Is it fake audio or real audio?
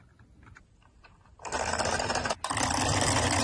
real